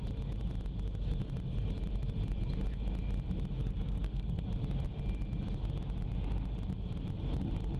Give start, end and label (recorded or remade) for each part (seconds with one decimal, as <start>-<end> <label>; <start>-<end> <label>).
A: 0.0-3.6 recorded; 3.6-4.4 remade; 4.4-7.8 recorded